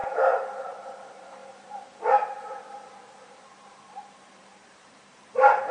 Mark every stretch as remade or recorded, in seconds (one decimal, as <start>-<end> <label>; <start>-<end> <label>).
0.0-1.4 remade; 1.4-3.3 recorded; 3.3-5.7 remade